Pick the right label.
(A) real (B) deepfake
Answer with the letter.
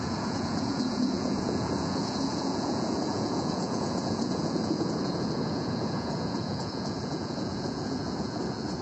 B